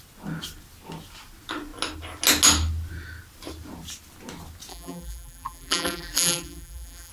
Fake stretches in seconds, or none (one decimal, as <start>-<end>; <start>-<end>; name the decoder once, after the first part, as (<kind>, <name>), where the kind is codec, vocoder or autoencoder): 4.7-7.1 (vocoder, BigVGAN v2)